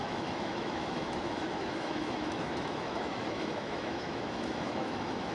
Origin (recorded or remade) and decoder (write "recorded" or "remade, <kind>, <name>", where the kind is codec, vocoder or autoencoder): remade, autoencoder, DAC-VAE